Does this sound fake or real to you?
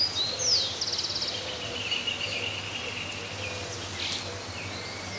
real